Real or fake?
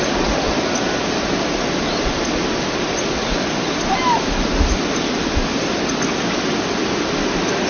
real